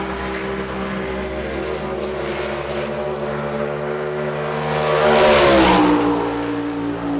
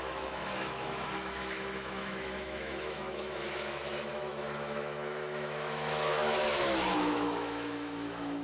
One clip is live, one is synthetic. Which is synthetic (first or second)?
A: second